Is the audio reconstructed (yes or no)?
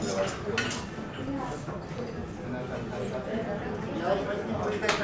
no